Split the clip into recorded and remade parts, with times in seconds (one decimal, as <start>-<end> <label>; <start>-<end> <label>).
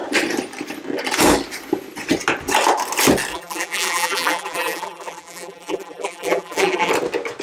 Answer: 0.0-3.3 recorded; 3.3-6.9 remade; 6.9-7.4 recorded